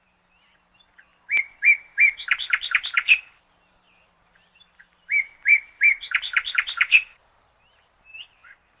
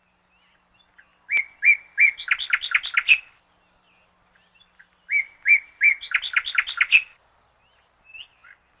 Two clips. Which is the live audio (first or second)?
second